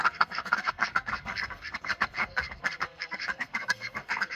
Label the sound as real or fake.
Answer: fake